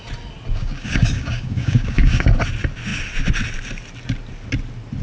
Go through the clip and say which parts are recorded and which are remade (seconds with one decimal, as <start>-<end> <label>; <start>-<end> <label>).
0.0-0.5 recorded; 0.5-2.3 remade; 2.3-5.0 recorded